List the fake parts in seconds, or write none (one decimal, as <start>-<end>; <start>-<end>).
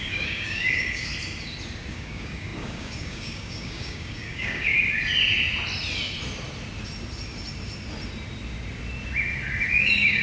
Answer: 0.0-1.1; 1.9-4.7; 9.7-10.2